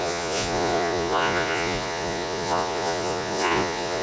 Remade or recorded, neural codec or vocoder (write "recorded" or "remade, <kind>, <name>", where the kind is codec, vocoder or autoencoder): remade, vocoder, Vocos